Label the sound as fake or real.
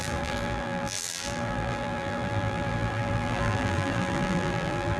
fake